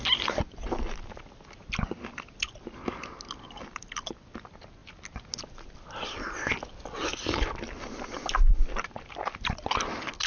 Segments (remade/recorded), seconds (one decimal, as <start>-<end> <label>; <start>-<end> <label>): 0.0-10.3 recorded

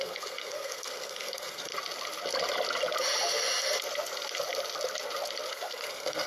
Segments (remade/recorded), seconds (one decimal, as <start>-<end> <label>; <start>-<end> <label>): 0.0-1.7 remade; 1.7-5.5 recorded; 5.5-6.3 remade

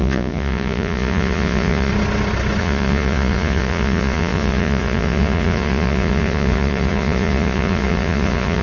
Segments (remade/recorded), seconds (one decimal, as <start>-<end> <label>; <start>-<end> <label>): 0.0-1.9 remade; 1.9-2.6 recorded; 2.6-8.6 remade

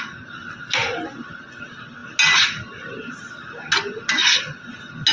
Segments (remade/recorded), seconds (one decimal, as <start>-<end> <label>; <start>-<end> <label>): 0.0-5.1 recorded

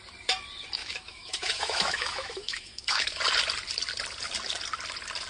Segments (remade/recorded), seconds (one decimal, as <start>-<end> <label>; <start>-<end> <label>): 0.0-0.8 recorded; 0.8-3.2 remade; 3.2-5.3 recorded

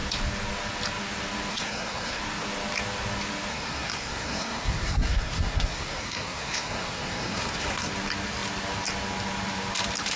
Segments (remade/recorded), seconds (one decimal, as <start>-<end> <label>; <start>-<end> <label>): 0.0-1.5 recorded; 1.5-2.2 remade; 2.2-3.5 recorded; 3.5-7.9 remade; 7.9-10.2 recorded